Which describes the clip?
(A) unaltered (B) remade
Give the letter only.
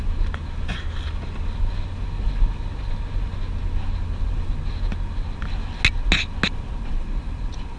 A